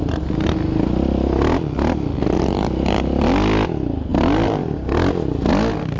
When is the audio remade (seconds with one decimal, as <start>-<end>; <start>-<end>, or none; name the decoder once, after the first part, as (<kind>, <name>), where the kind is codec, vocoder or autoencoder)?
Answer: none

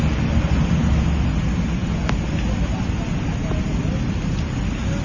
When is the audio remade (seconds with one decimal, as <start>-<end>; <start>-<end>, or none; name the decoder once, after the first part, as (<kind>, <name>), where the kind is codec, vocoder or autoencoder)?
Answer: none

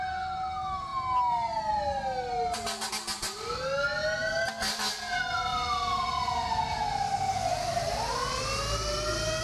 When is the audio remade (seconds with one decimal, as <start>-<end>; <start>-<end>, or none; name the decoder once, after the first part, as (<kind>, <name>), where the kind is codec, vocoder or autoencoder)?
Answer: none